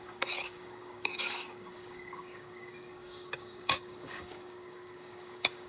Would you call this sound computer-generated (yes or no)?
yes